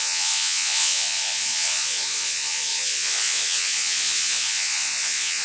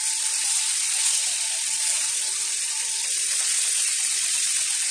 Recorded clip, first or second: second